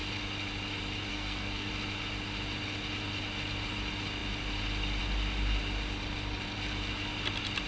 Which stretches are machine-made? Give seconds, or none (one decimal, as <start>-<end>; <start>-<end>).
1.1-1.7